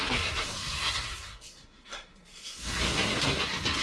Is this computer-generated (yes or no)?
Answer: yes